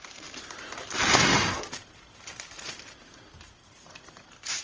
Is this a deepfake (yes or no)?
yes